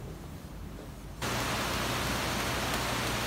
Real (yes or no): yes